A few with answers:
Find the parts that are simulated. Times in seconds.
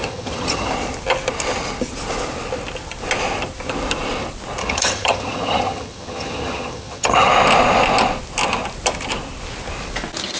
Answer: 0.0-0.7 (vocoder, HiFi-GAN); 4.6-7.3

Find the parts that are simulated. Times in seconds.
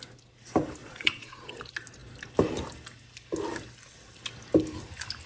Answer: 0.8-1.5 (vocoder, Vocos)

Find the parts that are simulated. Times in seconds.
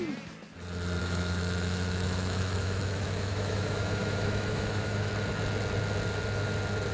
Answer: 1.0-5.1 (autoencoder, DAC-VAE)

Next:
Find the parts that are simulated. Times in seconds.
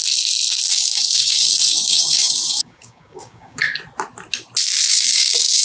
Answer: 0.7-3.6 (codec, DAC); 4.9-5.6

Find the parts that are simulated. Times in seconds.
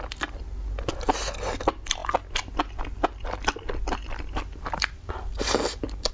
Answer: none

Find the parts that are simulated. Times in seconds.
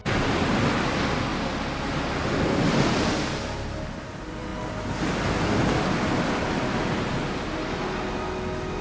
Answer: none